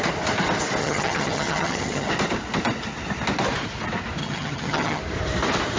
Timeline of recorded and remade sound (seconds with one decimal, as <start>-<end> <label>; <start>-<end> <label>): 0.0-0.8 recorded; 0.8-2.1 remade; 2.1-4.2 recorded; 4.2-5.0 remade; 5.0-5.8 recorded